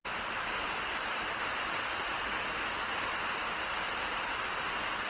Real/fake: real